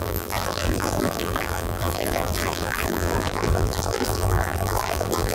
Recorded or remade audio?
remade